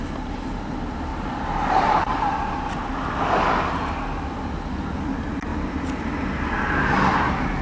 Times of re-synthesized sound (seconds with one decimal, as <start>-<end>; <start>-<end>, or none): 1.1-2.7